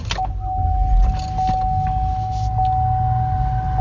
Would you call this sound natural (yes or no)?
yes